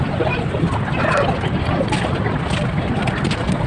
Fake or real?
real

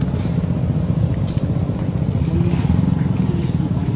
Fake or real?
real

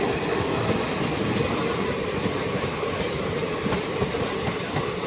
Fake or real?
real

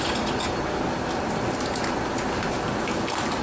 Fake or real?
real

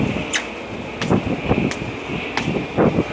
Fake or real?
real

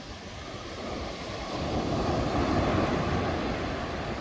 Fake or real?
real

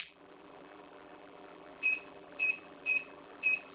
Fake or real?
fake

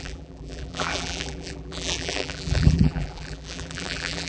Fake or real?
fake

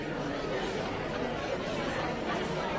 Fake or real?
real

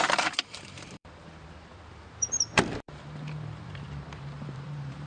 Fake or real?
fake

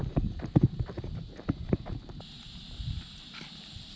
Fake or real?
real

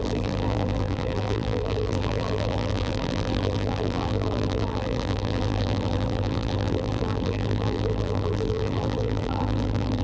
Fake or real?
fake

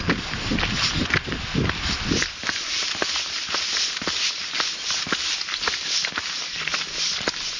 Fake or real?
real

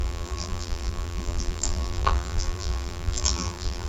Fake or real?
fake